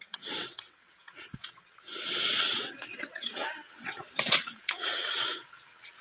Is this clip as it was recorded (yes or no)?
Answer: no